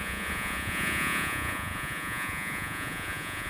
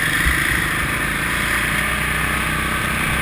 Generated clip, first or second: first